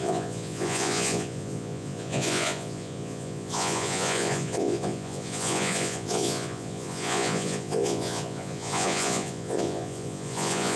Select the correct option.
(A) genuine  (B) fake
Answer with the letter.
B